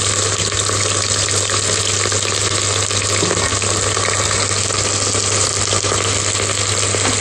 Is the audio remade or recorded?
recorded